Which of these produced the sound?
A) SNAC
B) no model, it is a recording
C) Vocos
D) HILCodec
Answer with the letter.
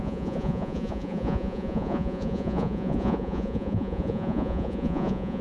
C